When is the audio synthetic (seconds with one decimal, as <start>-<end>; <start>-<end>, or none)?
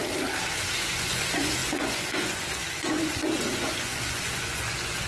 0.7-5.1